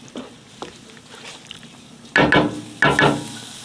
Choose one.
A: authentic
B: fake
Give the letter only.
A